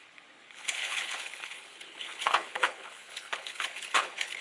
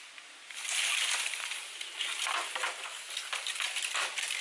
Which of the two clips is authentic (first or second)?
second